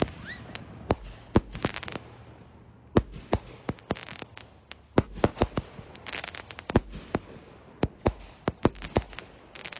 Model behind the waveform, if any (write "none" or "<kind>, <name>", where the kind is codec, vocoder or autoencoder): none